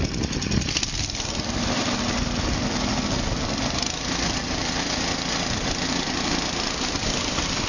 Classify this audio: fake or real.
real